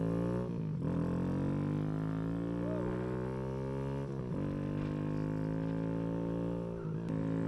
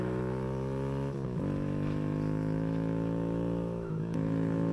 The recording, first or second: first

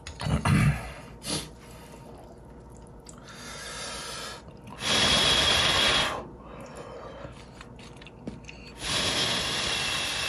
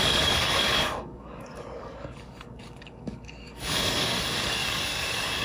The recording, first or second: first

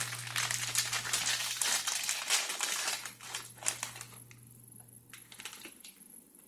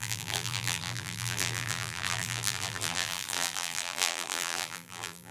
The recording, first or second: first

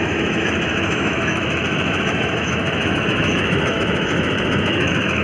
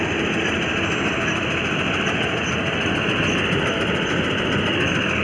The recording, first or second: second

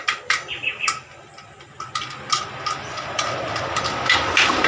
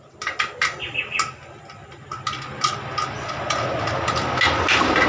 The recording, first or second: second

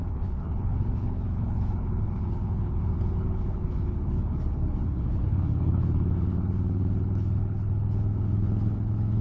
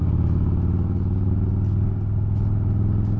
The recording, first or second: second